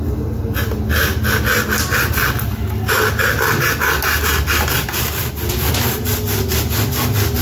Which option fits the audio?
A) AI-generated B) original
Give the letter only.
B